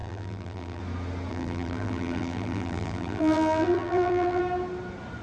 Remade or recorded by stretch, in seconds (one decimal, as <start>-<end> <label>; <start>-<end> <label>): 0.0-0.8 remade; 0.8-1.3 recorded; 1.3-4.4 remade; 4.4-5.2 recorded